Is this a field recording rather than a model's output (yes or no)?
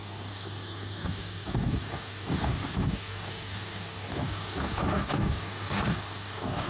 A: no